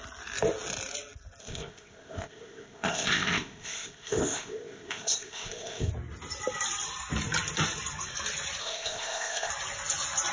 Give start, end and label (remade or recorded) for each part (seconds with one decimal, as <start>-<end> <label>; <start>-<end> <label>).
0.0-1.4 recorded; 1.4-5.9 remade; 5.9-8.6 recorded; 8.6-9.5 remade; 9.5-10.3 recorded